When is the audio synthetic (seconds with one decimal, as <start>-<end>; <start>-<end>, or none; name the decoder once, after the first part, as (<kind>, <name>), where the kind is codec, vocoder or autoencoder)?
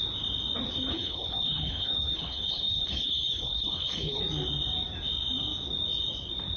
0.9-4.2 (codec, HILCodec)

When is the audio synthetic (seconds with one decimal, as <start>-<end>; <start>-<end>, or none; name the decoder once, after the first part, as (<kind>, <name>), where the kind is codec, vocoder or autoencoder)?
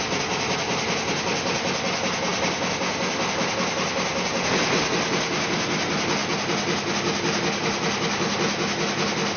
none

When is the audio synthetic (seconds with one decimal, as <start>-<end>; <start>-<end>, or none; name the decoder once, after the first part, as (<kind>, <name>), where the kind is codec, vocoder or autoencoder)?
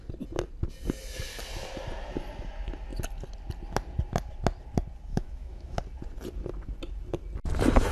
5.1-5.8 (autoencoder, DAC-VAE)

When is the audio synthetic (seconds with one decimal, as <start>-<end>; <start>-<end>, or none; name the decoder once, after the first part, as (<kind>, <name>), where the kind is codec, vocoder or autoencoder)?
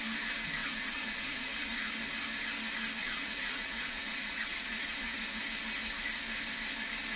0.6-1.9 (vocoder, Vocos); 3.0-5.4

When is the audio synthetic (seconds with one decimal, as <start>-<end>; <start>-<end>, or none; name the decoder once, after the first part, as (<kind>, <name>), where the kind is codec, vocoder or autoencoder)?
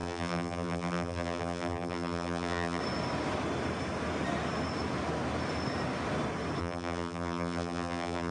0.0-2.8 (vocoder, BigVGAN v2); 6.6-8.3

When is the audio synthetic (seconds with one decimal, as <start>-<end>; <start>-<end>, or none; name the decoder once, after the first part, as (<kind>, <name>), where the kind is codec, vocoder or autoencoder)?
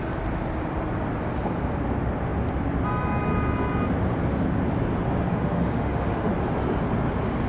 5.3-6.3 (autoencoder, DAC-VAE)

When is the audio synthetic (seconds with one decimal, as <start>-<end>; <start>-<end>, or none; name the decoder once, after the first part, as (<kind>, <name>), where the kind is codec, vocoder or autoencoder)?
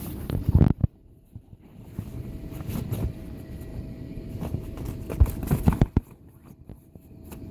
0.0-3.7 (vocoder, BigVGAN v2); 4.6-7.5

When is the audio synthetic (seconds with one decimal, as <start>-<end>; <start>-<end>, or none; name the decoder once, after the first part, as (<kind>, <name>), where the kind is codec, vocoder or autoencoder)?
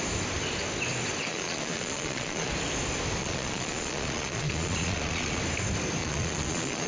1.3-2.5 (vocoder, Vocos); 3.2-5.4; 6.0-6.9